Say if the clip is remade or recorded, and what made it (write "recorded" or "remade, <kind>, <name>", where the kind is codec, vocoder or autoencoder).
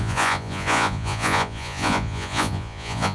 remade, vocoder, Vocos